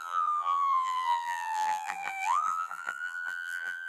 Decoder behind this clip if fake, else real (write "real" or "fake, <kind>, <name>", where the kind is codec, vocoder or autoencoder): fake, vocoder, BigVGAN v2